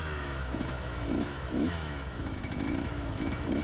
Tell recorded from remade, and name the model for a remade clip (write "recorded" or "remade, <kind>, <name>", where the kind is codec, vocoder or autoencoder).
remade, autoencoder, DAC-VAE